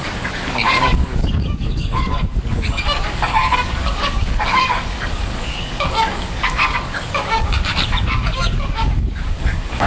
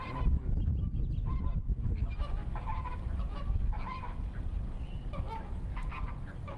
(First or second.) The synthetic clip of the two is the first